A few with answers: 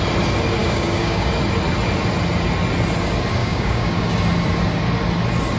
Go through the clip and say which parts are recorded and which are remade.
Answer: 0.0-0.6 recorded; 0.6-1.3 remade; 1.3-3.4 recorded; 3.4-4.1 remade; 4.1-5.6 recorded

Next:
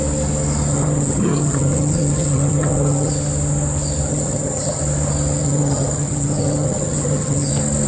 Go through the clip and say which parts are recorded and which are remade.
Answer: 0.0-0.7 recorded; 0.7-3.1 remade; 3.1-4.1 recorded; 4.1-4.8 remade; 4.8-5.4 recorded; 5.4-7.5 remade; 7.5-7.9 recorded

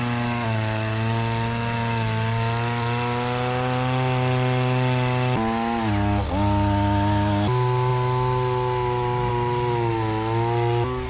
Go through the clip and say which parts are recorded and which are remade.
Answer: 0.0-11.1 recorded

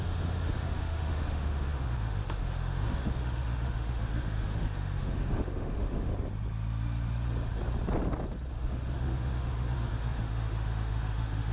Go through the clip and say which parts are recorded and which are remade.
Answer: 0.0-6.1 remade; 6.1-8.5 recorded; 8.5-11.5 remade